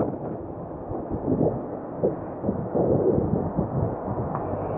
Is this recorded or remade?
recorded